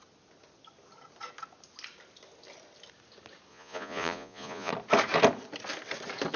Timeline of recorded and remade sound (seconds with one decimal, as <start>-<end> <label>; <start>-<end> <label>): 0.0-3.5 recorded; 3.5-4.7 remade; 4.7-6.4 recorded